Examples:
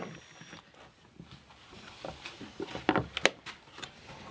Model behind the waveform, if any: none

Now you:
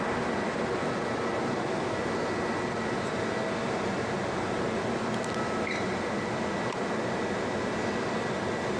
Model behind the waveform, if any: none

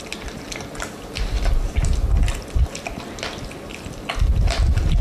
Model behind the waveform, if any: none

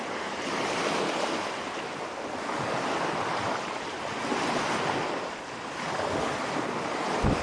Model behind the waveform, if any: none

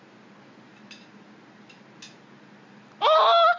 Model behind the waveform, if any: none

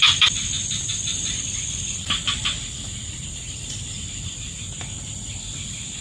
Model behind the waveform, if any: vocoder, BigVGAN v2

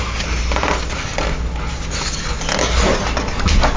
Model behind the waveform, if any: none